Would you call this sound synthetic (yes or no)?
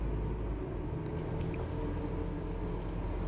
no